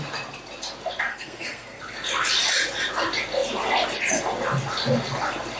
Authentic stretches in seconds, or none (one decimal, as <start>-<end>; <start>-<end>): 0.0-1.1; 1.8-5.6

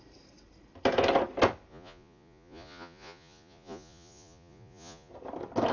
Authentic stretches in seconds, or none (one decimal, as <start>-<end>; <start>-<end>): 0.0-1.7; 5.1-5.7

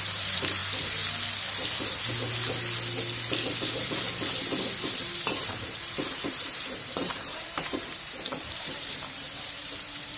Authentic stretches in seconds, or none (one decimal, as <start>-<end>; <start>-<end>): 0.6-4.9

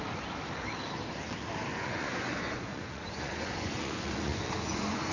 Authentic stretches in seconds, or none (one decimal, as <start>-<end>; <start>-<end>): 0.0-1.7

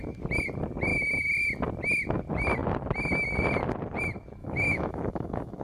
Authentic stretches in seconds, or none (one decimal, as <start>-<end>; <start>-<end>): 0.0-4.4